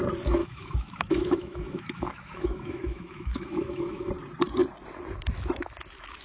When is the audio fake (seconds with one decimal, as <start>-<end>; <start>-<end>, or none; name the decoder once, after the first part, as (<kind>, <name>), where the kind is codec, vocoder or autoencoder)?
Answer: 0.4-4.1 (autoencoder, DAC-VAE)